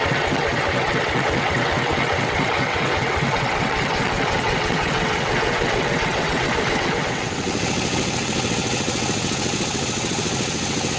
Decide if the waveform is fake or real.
fake